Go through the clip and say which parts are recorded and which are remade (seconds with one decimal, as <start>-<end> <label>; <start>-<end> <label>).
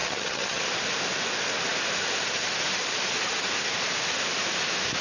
0.0-0.6 remade; 0.6-5.0 recorded